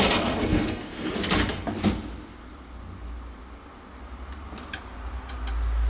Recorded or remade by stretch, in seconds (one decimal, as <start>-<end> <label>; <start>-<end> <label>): 0.0-0.5 recorded; 0.5-1.1 remade; 1.1-5.9 recorded